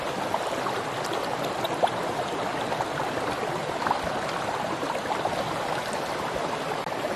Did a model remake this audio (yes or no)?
no